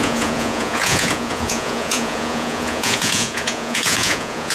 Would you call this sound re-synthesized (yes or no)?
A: yes